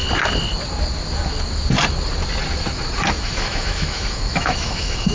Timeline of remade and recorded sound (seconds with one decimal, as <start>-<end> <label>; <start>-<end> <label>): 0.0-3.1 recorded; 3.1-5.1 remade